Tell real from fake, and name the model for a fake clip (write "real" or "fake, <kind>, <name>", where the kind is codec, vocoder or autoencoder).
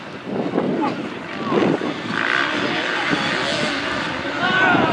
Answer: real